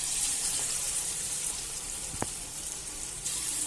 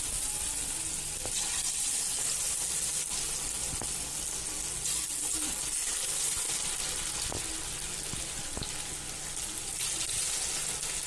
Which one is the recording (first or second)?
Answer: second